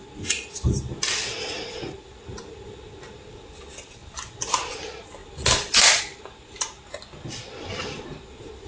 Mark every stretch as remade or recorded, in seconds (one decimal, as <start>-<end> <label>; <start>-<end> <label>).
0.0-8.7 recorded